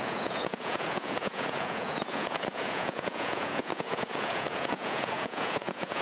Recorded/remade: remade